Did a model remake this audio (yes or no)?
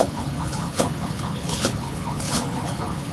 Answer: yes